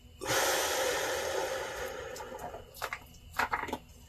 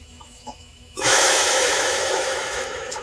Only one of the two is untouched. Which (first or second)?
first